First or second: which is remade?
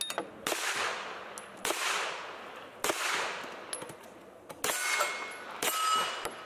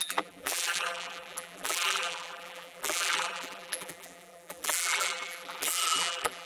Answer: second